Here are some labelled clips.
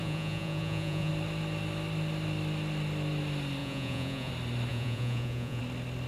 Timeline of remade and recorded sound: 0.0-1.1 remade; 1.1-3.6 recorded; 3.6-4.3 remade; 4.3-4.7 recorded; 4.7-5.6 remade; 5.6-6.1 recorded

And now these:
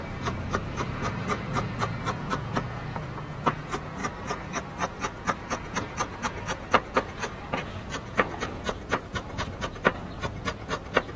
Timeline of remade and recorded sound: 0.0-4.0 remade; 4.0-5.0 recorded; 5.0-11.2 remade

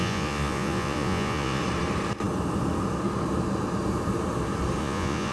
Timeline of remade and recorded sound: 0.0-1.6 remade; 1.6-4.8 recorded; 4.8-5.3 remade

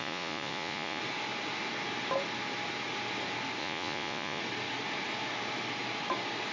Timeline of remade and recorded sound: 0.0-1.0 remade; 1.0-3.6 recorded; 3.6-4.4 remade; 4.4-6.5 recorded

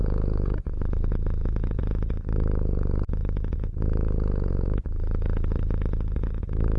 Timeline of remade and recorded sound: 0.0-1.8 remade; 1.8-6.8 recorded

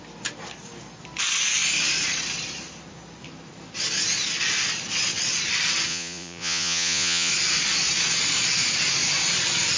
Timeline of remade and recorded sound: 0.0-5.9 recorded; 5.9-7.3 remade; 7.3-9.8 recorded